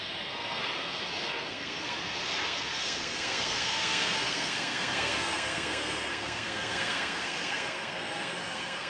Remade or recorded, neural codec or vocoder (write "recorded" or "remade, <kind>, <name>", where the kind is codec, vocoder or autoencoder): remade, codec, SNAC